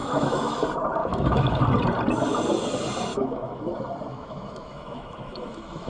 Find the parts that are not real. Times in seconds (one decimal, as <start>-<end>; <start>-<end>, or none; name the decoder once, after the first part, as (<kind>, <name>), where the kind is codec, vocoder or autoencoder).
0.0-0.6 (autoencoder, DAC-VAE); 1.0-1.6; 3.1-3.6; 4.1-5.9